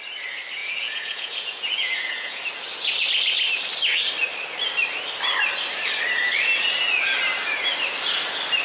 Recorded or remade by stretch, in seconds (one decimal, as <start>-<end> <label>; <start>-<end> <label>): 0.0-0.6 recorded; 0.6-2.4 remade; 2.4-8.6 recorded